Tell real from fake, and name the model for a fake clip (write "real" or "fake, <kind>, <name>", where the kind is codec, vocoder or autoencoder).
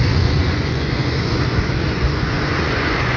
fake, vocoder, Vocos